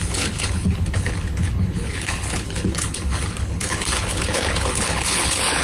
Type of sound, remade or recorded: remade